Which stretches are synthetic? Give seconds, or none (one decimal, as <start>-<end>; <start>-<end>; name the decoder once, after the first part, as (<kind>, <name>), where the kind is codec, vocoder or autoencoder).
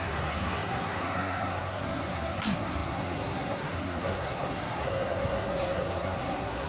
0.0-6.7 (codec, SNAC)